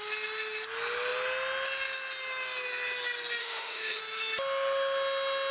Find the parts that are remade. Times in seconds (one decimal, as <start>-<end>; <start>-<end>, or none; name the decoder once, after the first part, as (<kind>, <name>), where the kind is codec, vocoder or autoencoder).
3.4-4.0 (autoencoder, DAC-VAE)